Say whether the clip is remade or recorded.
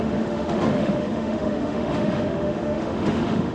remade